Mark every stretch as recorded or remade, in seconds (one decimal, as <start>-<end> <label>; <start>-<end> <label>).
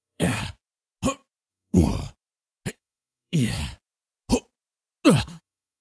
0.0-0.4 remade; 0.4-1.5 recorded; 1.5-1.9 remade; 1.9-2.7 recorded; 2.7-3.6 remade; 3.6-5.2 recorded; 5.2-5.8 remade